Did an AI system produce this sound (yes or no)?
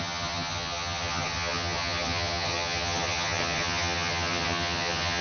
yes